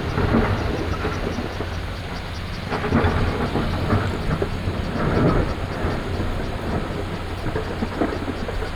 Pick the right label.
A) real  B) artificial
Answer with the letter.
A